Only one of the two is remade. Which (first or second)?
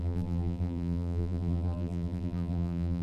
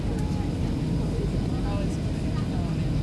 first